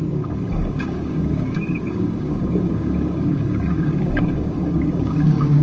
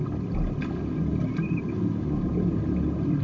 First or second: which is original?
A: second